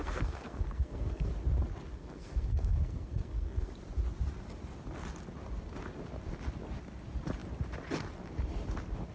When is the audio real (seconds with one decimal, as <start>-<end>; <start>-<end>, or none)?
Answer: 1.3-1.9; 3.7-9.1